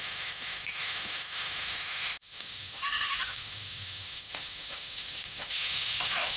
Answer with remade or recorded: remade